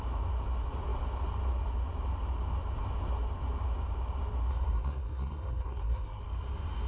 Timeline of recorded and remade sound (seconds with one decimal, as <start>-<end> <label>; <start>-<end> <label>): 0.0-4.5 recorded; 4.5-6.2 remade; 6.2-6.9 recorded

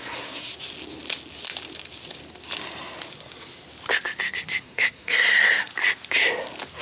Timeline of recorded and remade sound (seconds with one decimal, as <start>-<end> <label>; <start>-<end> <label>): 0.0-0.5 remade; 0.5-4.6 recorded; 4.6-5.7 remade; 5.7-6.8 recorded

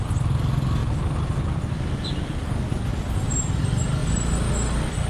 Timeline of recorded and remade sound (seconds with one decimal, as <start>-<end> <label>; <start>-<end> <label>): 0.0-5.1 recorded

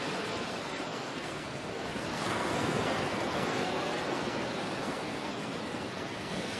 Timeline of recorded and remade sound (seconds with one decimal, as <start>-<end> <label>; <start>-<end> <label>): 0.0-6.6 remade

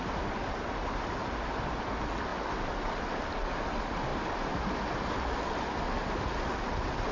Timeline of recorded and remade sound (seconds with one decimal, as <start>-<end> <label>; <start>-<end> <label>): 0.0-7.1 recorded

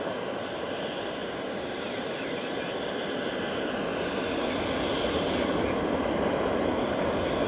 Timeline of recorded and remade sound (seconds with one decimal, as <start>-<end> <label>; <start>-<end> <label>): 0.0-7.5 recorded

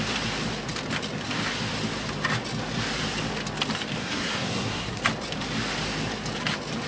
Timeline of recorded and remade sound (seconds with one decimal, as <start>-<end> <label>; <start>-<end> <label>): 0.0-4.0 recorded; 4.0-5.0 remade; 5.0-6.9 recorded